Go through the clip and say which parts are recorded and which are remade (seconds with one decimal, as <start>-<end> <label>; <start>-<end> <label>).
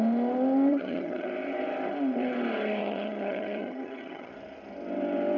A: 0.0-0.7 recorded; 0.7-1.3 remade; 1.3-2.8 recorded; 2.8-4.3 remade; 4.3-5.4 recorded